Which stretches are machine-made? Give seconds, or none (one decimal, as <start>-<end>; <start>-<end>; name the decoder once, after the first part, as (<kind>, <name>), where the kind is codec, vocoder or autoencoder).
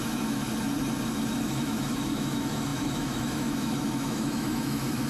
0.0-0.4 (autoencoder, DAC-VAE); 1.4-5.1